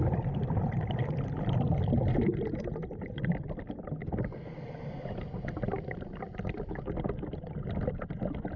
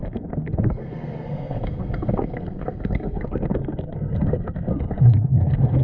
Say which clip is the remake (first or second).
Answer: second